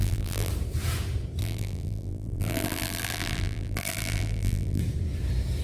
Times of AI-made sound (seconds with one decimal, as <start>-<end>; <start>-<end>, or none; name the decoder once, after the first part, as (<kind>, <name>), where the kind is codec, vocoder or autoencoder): 0.0-0.5 (vocoder, BigVGAN v2); 1.4-4.8